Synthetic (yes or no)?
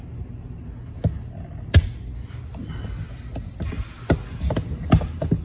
no